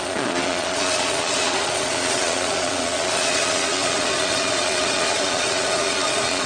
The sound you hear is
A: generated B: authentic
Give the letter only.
A